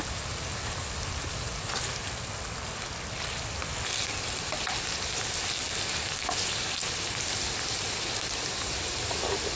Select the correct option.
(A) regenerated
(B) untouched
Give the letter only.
B